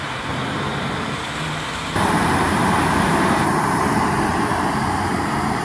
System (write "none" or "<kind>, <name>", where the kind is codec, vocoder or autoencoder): vocoder, BigVGAN v2